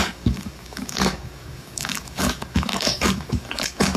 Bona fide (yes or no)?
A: no